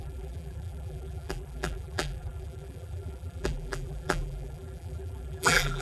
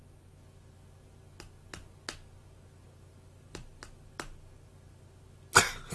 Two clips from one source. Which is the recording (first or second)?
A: second